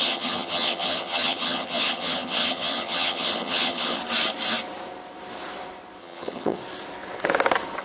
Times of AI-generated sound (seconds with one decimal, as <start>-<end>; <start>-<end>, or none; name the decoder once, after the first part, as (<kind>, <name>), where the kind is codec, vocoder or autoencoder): 0.0-4.0 (vocoder, HiFi-GAN); 6.0-6.6

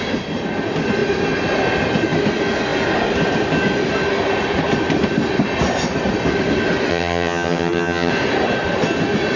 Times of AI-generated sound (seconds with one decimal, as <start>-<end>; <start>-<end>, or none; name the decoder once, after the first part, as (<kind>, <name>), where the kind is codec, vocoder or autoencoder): 6.9-8.1 (vocoder, HiFi-GAN)